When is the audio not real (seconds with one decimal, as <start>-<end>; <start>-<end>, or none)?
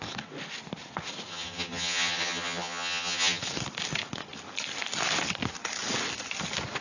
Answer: 1.3-3.4